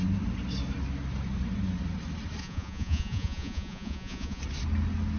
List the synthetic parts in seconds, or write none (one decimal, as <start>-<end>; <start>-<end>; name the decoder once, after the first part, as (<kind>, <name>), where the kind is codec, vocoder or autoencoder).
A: 2.4-4.4 (vocoder, Vocos)